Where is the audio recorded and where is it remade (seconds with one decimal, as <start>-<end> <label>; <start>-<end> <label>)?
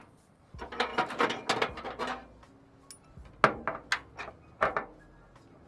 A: 0.0-5.7 recorded